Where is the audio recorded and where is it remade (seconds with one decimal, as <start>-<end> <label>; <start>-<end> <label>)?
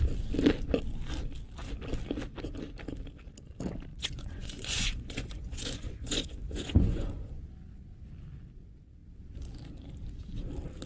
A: 0.0-3.9 recorded; 3.9-7.3 remade; 7.3-10.9 recorded